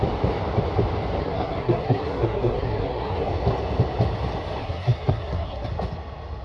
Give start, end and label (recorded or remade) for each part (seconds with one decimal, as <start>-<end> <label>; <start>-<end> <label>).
0.0-1.2 recorded; 1.2-3.3 remade; 3.3-4.6 recorded; 4.6-5.7 remade; 5.7-6.4 recorded